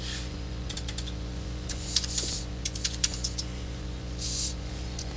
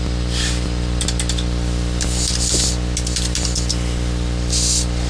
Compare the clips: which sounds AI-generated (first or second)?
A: first